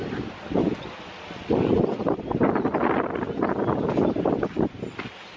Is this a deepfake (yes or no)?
no